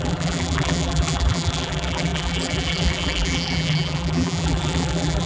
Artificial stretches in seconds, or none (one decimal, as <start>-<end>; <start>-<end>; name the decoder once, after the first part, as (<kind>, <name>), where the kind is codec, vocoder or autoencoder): 0.0-5.3 (vocoder, BigVGAN v2)